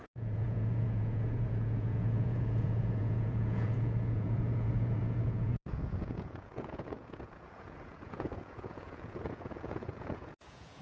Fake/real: fake